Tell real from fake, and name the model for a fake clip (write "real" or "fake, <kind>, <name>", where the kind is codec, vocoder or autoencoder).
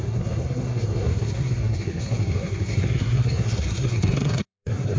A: fake, codec, SNAC